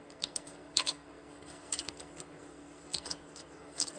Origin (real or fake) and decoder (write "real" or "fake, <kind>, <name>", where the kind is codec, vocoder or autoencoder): fake, codec, SNAC